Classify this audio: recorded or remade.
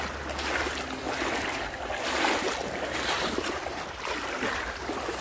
recorded